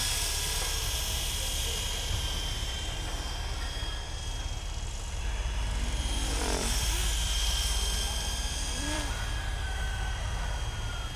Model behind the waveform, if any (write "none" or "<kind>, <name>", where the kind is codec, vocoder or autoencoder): vocoder, BigVGAN v2